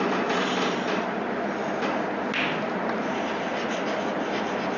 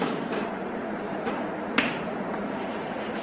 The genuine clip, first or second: first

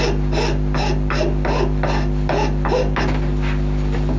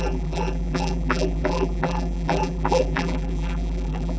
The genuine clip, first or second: first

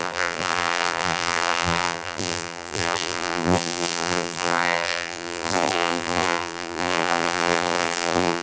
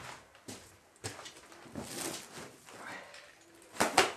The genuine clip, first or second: second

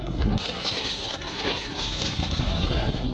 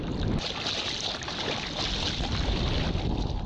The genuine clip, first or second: second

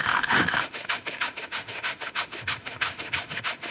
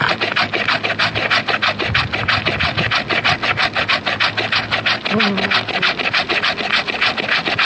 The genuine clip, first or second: second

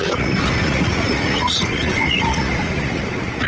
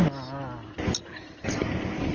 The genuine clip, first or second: second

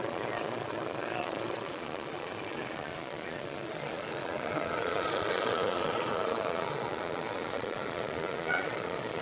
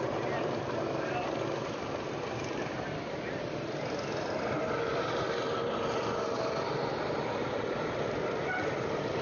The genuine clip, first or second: second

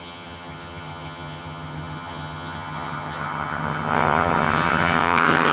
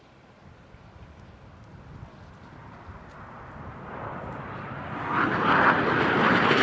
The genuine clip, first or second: second